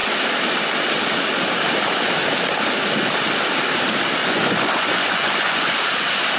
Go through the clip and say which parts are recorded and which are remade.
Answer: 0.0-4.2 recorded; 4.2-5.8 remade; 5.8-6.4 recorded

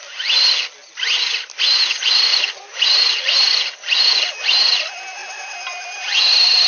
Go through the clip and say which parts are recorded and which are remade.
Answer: 0.0-6.7 recorded

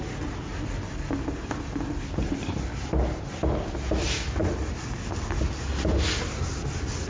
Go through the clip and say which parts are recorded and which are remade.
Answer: 0.0-7.1 recorded

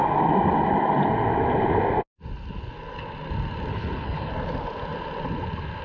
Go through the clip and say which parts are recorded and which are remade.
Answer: 0.0-3.7 recorded; 3.7-4.3 remade; 4.3-5.8 recorded

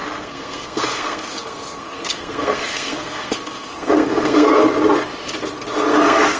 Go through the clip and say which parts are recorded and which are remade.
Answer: 0.0-4.6 remade; 4.6-5.9 recorded; 5.9-6.4 remade

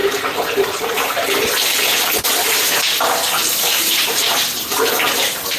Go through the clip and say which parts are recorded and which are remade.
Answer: 0.0-0.7 remade; 0.7-3.4 recorded; 3.4-4.4 remade; 4.4-5.6 recorded

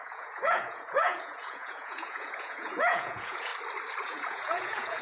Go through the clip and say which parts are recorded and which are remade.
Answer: 0.0-3.5 remade; 3.5-4.0 recorded; 4.0-5.0 remade